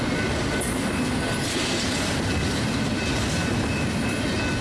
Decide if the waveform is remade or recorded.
recorded